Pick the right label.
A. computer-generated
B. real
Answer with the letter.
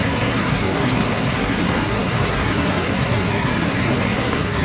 A